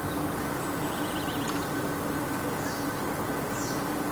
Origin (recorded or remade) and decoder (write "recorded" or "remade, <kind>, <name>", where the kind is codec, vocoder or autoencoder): recorded